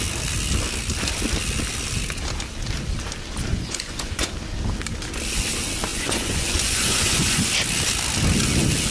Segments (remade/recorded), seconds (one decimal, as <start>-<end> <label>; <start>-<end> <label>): 0.0-3.5 recorded; 3.5-4.3 remade; 4.3-5.9 recorded; 5.9-7.5 remade; 7.5-8.9 recorded